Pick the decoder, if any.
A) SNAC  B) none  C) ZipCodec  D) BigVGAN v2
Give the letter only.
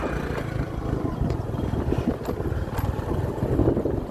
B